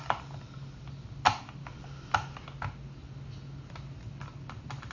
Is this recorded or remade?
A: recorded